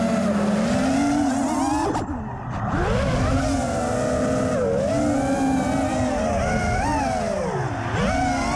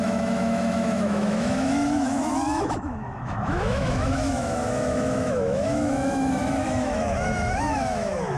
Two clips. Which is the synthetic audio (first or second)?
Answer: second